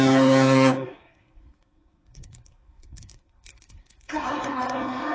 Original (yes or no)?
no